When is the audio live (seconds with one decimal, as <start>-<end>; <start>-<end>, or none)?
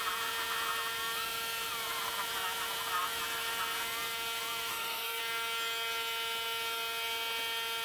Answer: 0.0-4.7; 5.2-7.8